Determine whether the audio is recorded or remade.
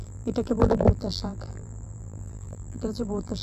remade